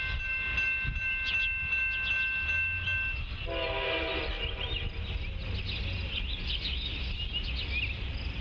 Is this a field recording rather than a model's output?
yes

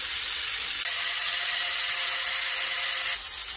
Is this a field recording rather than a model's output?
yes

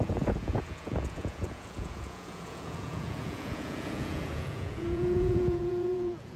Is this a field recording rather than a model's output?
no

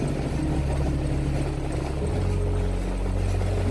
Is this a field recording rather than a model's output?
yes